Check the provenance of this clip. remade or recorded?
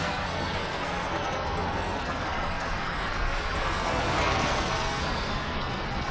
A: remade